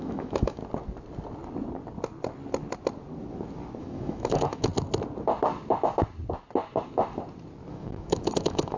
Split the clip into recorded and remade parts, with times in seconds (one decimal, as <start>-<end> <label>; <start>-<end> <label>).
0.0-0.6 remade; 0.6-3.8 recorded; 3.8-4.7 remade; 4.7-7.7 recorded; 7.7-8.8 remade